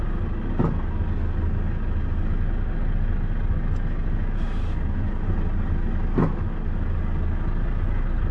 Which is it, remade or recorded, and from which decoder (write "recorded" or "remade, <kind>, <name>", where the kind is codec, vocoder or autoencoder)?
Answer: recorded